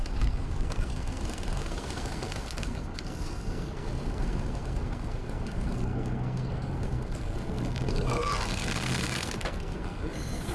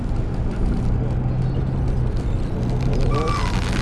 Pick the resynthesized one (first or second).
first